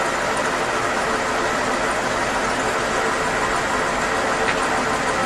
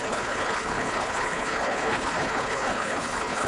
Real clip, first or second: first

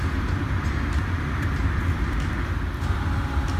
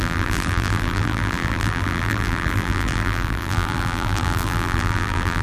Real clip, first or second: first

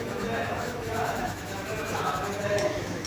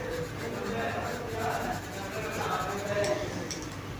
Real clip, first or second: second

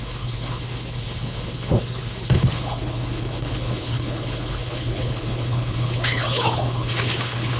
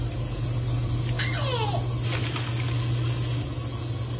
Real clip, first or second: second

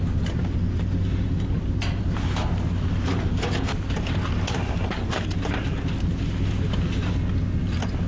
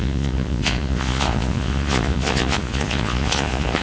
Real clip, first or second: first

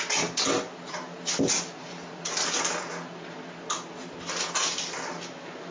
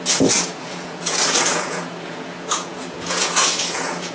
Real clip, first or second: first